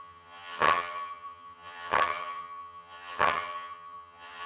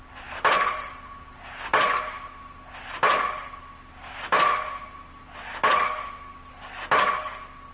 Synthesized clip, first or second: first